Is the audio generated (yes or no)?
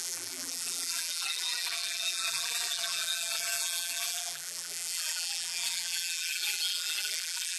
yes